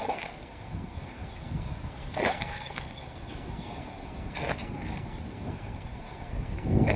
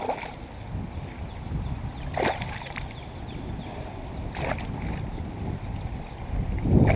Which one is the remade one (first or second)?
first